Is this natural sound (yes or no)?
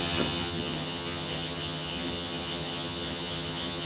no